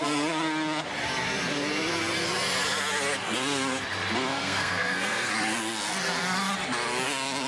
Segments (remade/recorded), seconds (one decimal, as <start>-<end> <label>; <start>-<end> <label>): 0.0-4.3 recorded; 4.3-5.3 remade; 5.3-7.5 recorded